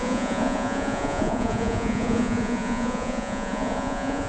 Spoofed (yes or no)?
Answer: yes